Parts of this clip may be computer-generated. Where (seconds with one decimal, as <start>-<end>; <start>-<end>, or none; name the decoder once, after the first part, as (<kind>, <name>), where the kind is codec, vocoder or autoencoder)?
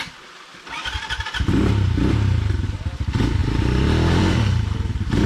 none